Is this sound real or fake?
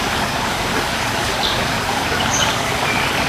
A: fake